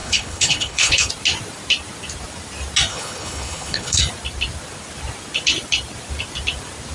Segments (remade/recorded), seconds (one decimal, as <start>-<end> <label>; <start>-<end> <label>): 0.0-1.1 remade; 1.1-2.9 recorded; 2.9-4.0 remade; 4.0-6.9 recorded